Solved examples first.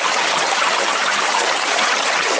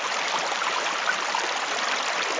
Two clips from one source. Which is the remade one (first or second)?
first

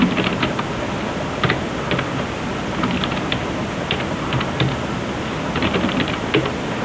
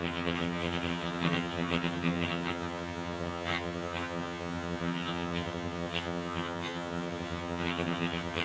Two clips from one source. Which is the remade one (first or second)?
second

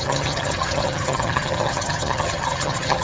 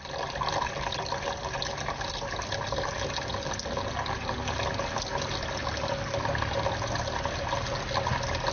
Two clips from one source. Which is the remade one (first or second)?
first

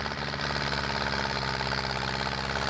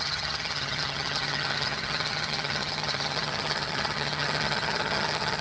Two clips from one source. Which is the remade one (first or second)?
second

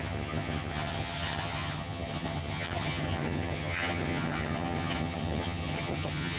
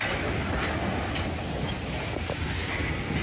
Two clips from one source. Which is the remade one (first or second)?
first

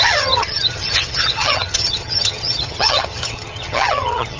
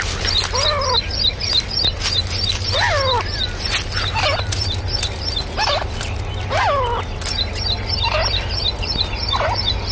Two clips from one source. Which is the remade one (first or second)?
first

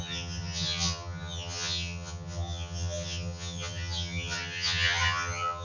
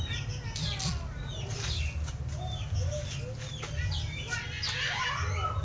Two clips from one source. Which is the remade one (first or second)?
first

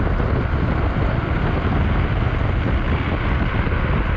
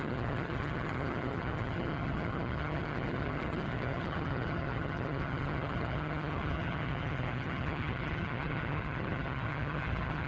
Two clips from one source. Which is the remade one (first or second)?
second